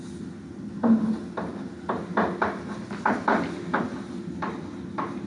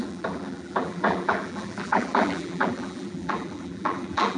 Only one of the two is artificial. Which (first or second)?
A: second